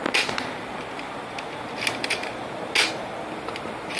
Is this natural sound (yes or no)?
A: yes